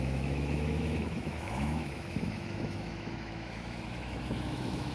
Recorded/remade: remade